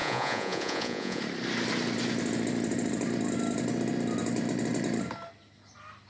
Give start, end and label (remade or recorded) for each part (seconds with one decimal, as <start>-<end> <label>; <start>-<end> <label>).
0.0-1.2 remade; 1.2-6.1 recorded